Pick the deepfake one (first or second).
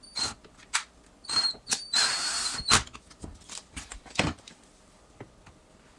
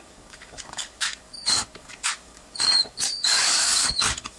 second